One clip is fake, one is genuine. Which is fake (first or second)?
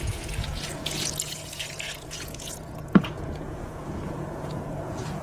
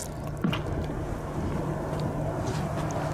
first